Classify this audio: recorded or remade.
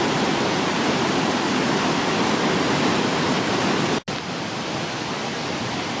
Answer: recorded